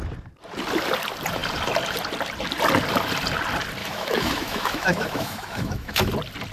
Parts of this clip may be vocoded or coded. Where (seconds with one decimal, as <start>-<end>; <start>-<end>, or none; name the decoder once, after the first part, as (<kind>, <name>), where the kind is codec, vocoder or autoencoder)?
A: 3.8-6.1 (autoencoder, DAC-VAE)